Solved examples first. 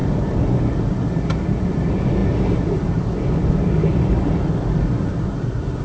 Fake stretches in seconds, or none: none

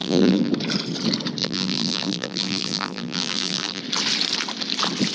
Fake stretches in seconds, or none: 0.0-0.5 (vocoder, BigVGAN v2); 1.4-3.8

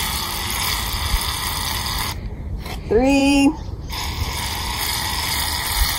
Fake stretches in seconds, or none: 3.2-3.9 (vocoder, BigVGAN v2)

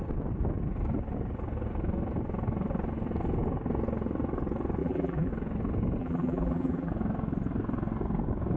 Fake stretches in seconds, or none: 4.8-5.3 (vocoder, BigVGAN v2); 6.0-6.9

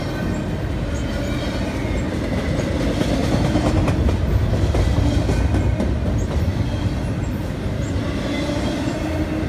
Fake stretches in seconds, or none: none

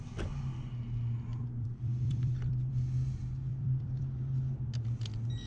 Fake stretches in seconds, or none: 1.3-2.7 (vocoder, BigVGAN v2); 3.5-4.0

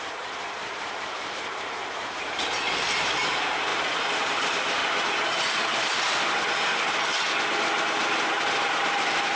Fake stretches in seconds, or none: 0.0-4.8 (vocoder, BigVGAN v2); 8.5-9.4

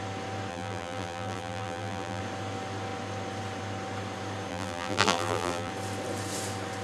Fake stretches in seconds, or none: 0.5-2.2 (vocoder, BigVGAN v2); 4.5-5.7